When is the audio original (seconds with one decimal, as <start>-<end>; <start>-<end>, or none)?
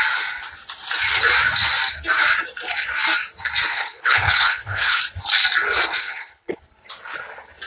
0.0-3.7; 5.0-6.0; 6.6-7.7